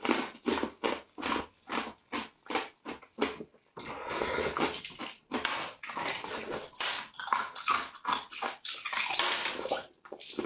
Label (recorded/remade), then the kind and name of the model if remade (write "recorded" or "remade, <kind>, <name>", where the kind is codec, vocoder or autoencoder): recorded